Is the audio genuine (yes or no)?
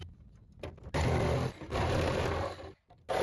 yes